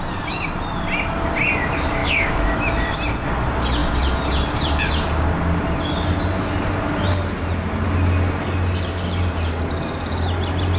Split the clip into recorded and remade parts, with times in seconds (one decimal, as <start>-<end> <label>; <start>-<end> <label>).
0.0-2.0 recorded; 2.0-2.7 remade; 2.7-10.8 recorded